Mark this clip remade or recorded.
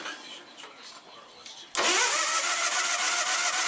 recorded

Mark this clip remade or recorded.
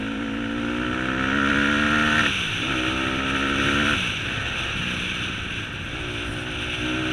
recorded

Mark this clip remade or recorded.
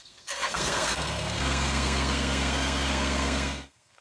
remade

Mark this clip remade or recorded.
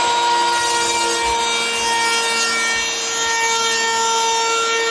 recorded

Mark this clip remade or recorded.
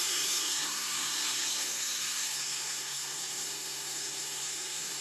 remade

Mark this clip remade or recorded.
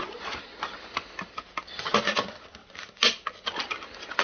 recorded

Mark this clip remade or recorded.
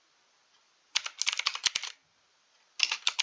recorded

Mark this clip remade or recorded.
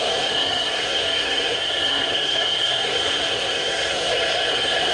remade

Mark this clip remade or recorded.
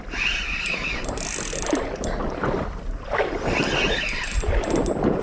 recorded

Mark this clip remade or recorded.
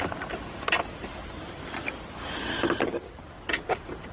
recorded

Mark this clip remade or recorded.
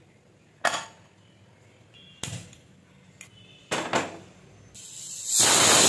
recorded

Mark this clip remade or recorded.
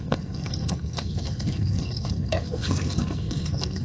remade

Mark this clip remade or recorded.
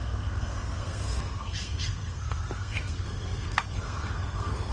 remade